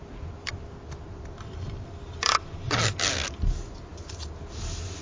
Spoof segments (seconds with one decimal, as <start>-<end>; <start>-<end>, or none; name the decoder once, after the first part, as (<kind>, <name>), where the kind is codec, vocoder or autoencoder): none